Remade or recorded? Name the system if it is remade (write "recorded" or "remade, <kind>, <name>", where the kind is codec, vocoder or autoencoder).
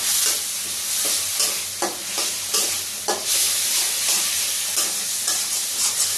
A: recorded